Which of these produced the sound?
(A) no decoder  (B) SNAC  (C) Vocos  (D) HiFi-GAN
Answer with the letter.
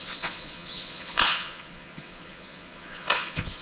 C